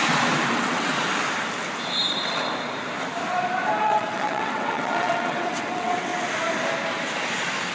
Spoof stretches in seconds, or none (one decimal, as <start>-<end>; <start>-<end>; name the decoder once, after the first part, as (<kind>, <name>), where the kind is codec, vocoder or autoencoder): 0.5-0.9 (vocoder, WaveNeXt); 3.8-6.1